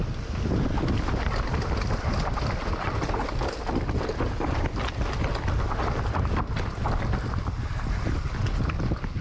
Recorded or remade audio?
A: recorded